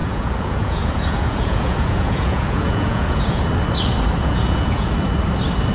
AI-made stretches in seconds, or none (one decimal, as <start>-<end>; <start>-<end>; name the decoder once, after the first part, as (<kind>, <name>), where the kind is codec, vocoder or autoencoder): 0.0-3.4 (vocoder, Vocos); 4.2-4.9